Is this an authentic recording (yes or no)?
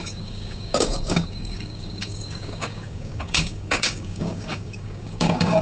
no